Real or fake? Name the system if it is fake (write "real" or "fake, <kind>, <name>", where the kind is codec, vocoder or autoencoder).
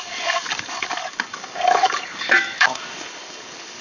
fake, codec, DAC